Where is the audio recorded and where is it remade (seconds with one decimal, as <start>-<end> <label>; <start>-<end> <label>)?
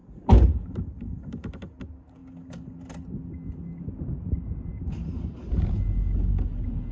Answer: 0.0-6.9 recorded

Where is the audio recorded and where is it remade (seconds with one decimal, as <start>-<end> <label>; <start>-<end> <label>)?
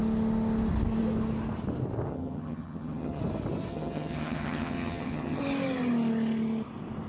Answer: 0.0-2.1 recorded; 2.1-3.2 remade; 3.2-3.7 recorded; 3.7-5.4 remade; 5.4-7.1 recorded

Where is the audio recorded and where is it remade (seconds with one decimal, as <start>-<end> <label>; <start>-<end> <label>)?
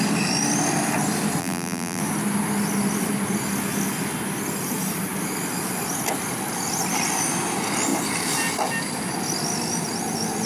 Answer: 0.0-1.4 recorded; 1.4-2.0 remade; 2.0-10.5 recorded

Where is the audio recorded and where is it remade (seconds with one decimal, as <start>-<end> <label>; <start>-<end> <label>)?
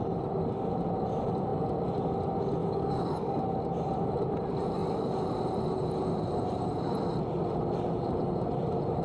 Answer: 0.0-2.6 recorded; 2.6-3.4 remade; 3.4-9.0 recorded